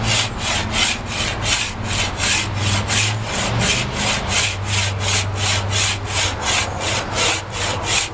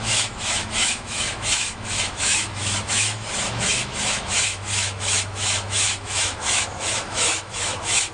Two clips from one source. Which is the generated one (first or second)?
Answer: second